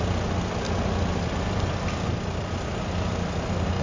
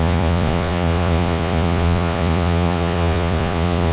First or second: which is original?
first